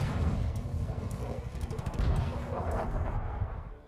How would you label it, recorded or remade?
remade